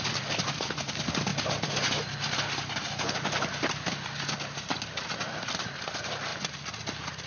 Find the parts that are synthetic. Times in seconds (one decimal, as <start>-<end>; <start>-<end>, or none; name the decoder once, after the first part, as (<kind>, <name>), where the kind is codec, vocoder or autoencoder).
0.0-6.3 (vocoder, BigVGAN v2)